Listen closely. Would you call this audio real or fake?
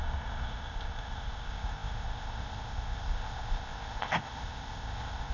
fake